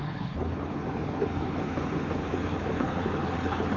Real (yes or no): no